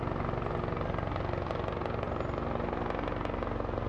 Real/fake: real